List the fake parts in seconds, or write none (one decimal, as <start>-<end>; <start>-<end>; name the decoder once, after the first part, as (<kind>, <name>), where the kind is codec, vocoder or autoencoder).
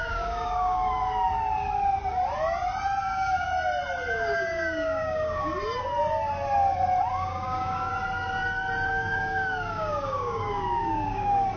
0.0-1.0 (codec, DAC); 3.0-3.5; 4.1-5.5; 7.1-7.9; 8.9-11.6